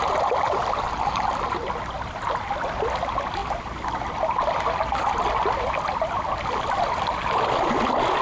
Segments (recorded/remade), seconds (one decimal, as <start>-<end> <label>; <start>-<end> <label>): 0.0-8.2 recorded